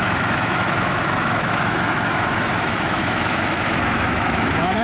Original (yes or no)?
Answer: no